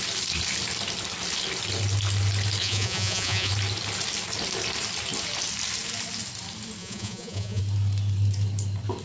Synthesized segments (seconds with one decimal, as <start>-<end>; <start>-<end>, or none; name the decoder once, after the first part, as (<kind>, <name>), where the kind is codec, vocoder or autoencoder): 2.6-3.5 (vocoder, Vocos); 6.8-7.6